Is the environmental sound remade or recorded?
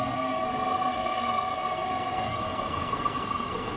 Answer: remade